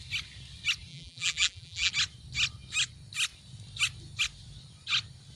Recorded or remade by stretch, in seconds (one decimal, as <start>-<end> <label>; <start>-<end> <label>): 0.0-0.9 recorded; 0.9-1.9 remade; 1.9-5.4 recorded